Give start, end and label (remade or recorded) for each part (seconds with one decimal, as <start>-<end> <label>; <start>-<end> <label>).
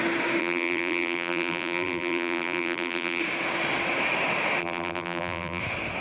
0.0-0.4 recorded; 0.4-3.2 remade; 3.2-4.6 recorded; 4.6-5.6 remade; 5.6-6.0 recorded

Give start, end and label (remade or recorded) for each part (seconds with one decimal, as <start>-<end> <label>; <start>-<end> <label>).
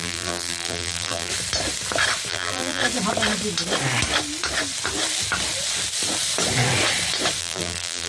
0.0-1.3 remade; 1.3-2.3 recorded; 2.3-2.8 remade; 2.8-7.4 recorded; 7.4-8.1 remade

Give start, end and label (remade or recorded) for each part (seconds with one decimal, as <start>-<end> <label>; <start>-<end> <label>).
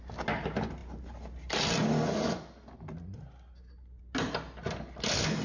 0.0-5.4 recorded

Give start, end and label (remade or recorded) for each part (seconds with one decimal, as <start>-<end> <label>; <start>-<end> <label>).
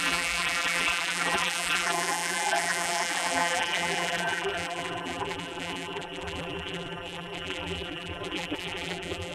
0.0-9.3 remade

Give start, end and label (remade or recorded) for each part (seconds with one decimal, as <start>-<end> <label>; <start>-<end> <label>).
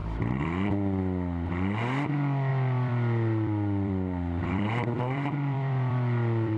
0.0-0.7 remade; 0.7-2.5 recorded; 2.5-6.6 remade